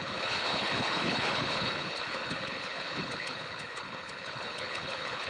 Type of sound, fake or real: fake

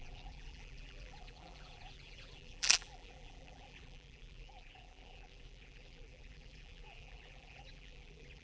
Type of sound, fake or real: fake